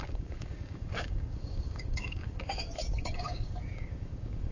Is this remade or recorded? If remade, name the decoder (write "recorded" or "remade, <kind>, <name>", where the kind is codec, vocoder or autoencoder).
remade, codec, DAC